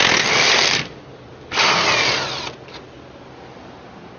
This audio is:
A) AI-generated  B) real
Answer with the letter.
B